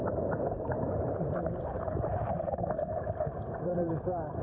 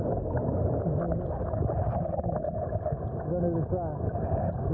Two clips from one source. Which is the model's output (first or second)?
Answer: first